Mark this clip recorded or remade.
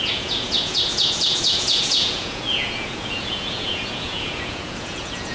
remade